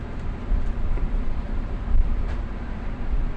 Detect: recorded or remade remade